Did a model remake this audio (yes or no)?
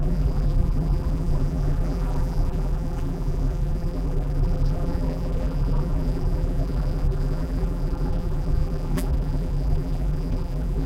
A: yes